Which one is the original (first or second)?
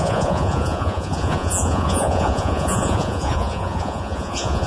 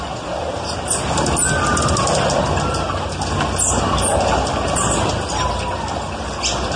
second